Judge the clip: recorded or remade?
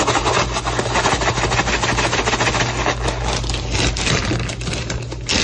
recorded